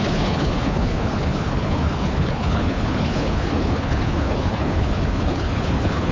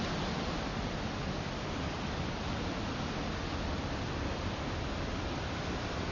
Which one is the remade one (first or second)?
first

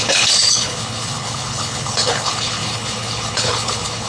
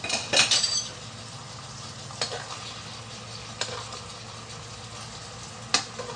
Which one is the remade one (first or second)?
first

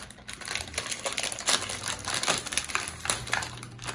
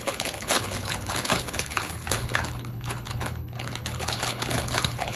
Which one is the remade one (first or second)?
second